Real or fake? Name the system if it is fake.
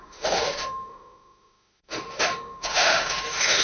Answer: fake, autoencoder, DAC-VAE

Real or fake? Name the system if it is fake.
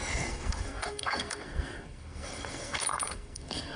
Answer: fake, codec, SNAC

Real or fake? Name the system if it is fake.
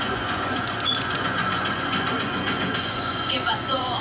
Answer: fake, vocoder, Vocos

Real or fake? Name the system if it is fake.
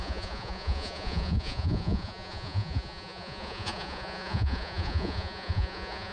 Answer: fake, vocoder, Vocos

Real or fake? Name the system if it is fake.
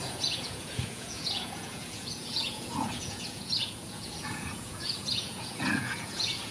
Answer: fake, vocoder, Vocos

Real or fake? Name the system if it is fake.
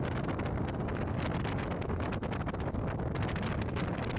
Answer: real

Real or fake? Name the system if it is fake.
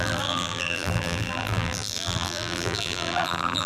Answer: fake, vocoder, BigVGAN v2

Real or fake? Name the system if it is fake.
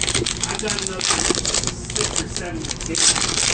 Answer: real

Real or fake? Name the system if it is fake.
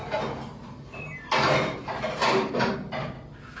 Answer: real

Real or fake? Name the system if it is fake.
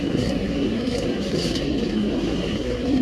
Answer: fake, codec, SNAC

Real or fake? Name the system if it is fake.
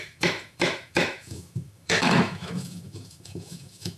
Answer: fake, autoencoder, DAC-VAE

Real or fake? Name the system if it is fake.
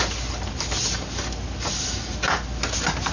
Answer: real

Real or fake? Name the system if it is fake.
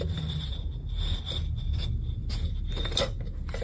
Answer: real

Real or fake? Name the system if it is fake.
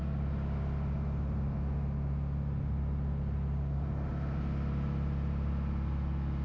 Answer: real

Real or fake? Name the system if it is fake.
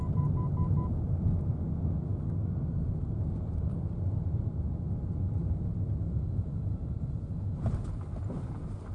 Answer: real